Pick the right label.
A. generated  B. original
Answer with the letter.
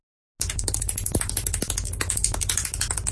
B